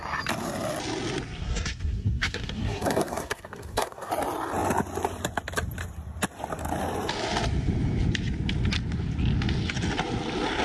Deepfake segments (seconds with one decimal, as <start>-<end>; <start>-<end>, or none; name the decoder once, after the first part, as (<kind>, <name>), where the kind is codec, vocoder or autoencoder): 1.4-4.1 (codec, SNAC)